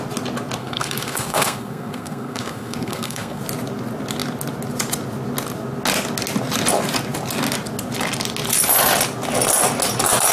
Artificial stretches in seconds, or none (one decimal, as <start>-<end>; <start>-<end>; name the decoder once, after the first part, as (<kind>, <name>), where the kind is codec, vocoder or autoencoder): 0.6-3.4 (codec, SNAC)